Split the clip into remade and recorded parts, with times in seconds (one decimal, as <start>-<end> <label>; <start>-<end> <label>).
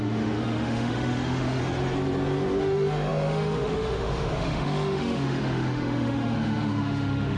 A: 0.0-1.6 remade; 1.6-2.6 recorded; 2.6-7.4 remade